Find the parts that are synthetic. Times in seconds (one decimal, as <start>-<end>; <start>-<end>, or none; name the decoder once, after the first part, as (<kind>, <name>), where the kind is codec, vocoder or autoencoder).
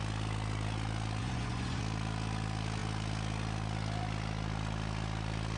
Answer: 1.2-1.8 (vocoder, Vocos)